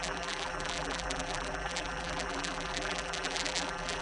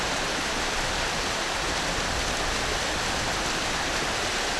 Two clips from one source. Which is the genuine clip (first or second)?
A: second